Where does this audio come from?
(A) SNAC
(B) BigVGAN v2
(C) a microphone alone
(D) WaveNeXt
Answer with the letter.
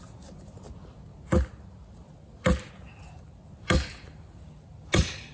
C